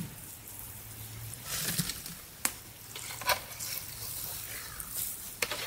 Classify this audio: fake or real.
real